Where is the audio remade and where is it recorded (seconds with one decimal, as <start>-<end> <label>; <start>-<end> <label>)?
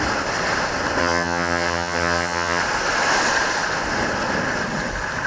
0.0-1.0 recorded; 1.0-2.6 remade; 2.6-5.3 recorded